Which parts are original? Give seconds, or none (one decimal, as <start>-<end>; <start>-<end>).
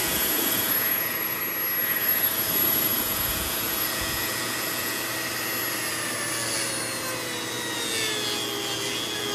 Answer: 1.4-1.8; 5.0-9.3